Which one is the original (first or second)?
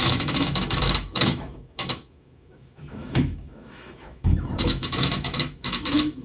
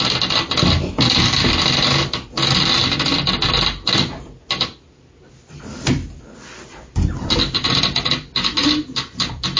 second